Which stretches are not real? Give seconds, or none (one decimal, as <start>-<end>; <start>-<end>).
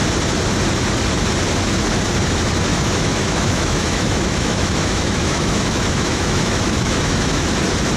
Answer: 2.7-7.5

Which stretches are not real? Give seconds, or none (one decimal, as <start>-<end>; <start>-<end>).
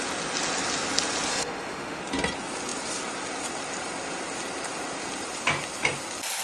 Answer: 1.3-2.0